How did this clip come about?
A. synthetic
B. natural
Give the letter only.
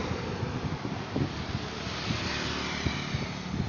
B